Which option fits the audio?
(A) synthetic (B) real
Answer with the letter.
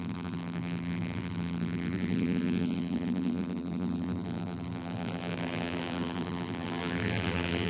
A